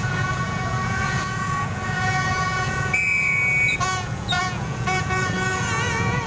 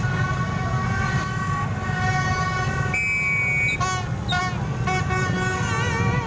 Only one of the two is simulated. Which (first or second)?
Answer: first